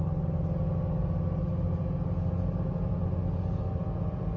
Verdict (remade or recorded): recorded